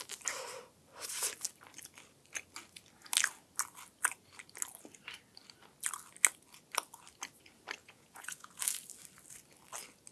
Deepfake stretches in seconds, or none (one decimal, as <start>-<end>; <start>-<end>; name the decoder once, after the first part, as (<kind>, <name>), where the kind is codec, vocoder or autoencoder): 7.8-8.5 (vocoder, Vocos)